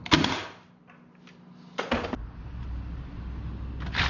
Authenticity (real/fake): real